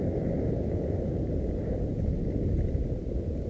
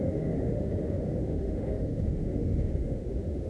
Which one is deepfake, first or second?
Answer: second